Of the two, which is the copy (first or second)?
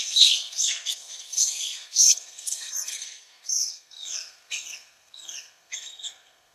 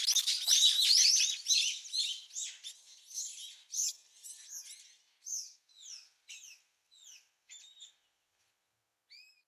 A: first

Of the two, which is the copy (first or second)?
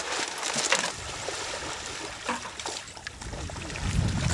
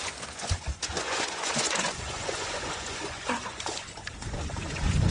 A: second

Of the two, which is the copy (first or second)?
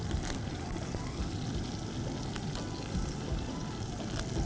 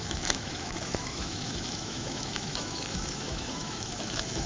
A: second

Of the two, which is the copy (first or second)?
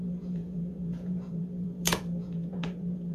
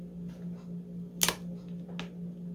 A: first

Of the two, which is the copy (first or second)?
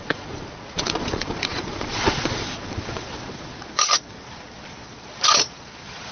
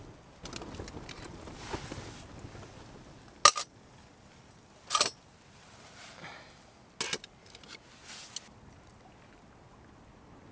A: first